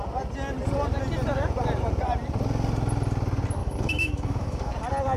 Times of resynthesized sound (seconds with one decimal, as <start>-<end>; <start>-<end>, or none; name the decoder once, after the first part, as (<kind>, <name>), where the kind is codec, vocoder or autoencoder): 3.6-4.7 (autoencoder, DAC-VAE)